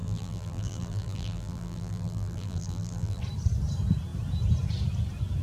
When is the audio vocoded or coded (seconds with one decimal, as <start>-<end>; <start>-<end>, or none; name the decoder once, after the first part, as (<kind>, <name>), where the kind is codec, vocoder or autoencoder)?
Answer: 0.0-3.2 (vocoder, BigVGAN v2)